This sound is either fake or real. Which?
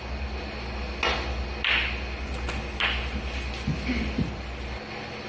real